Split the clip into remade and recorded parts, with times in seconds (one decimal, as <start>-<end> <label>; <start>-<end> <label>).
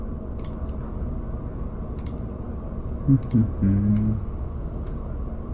0.0-3.9 recorded; 3.9-5.0 remade; 5.0-5.5 recorded